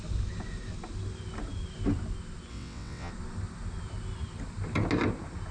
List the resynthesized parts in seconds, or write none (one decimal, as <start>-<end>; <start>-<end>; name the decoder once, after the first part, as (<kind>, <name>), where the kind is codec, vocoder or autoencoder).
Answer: 2.5-3.1 (vocoder, WaveNeXt)